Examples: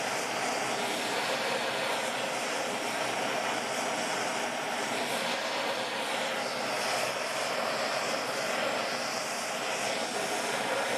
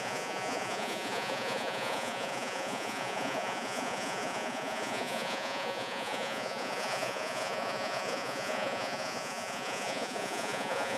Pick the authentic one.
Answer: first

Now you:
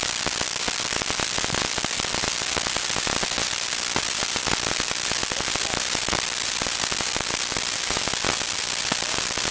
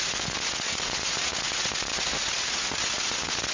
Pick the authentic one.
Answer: first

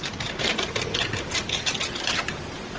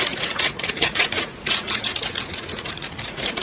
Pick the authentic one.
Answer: first